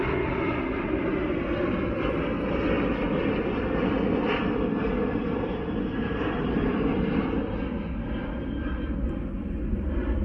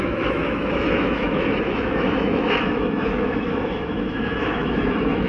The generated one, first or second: second